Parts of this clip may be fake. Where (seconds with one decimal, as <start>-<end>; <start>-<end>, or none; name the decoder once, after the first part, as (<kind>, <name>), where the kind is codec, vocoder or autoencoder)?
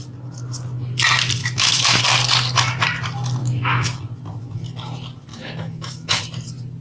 1.4-2.0 (autoencoder, DAC-VAE); 3.4-4.0; 5.3-6.2